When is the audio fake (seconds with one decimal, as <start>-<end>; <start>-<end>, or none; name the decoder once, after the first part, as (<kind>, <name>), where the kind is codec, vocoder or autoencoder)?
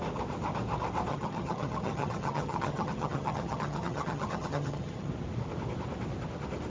1.1-5.1 (vocoder, HiFi-GAN)